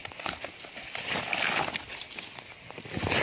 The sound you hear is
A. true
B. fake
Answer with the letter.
A